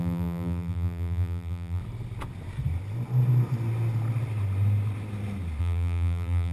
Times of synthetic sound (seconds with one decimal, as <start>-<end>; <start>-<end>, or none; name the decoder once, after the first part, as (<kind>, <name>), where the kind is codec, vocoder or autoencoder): 0.0-1.8 (vocoder, BigVGAN v2); 5.6-6.5